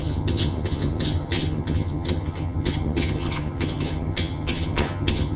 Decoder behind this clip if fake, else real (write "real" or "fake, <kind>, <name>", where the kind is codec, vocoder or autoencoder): fake, vocoder, HiFi-GAN